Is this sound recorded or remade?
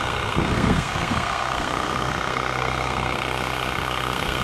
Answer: remade